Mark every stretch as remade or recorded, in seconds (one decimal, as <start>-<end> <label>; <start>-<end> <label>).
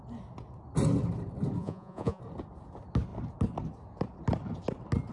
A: 0.0-1.6 recorded; 1.6-2.2 remade; 2.2-5.1 recorded